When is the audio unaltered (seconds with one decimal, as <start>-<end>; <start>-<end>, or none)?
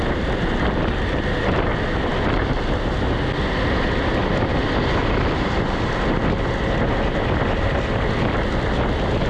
0.0-9.3